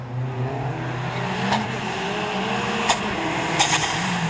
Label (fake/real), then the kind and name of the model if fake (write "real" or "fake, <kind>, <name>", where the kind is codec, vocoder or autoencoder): real